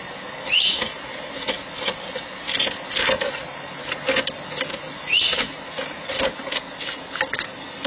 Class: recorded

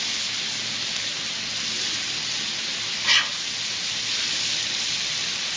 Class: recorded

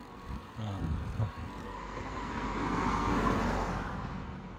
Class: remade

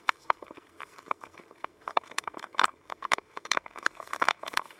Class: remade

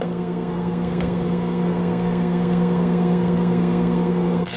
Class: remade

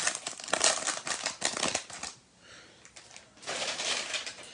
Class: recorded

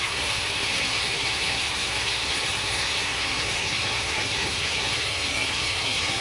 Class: remade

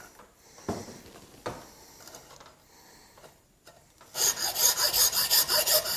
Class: recorded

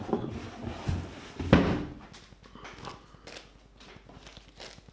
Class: recorded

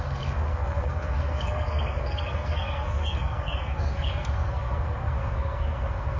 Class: remade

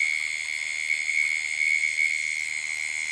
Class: recorded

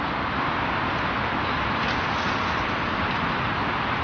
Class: recorded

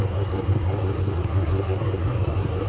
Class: remade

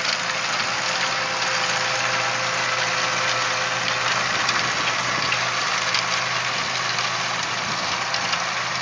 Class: recorded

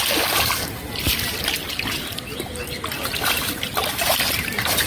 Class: recorded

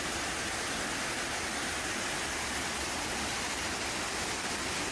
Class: recorded